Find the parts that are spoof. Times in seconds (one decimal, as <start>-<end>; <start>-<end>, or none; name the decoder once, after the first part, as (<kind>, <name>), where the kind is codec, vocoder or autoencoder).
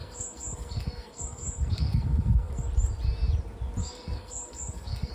0.0-2.6 (codec, SNAC); 3.8-5.1